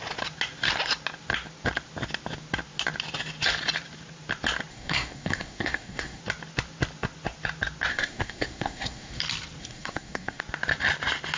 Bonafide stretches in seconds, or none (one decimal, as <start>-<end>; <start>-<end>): 0.0-4.7; 6.2-7.9; 9.2-9.6; 10.4-11.4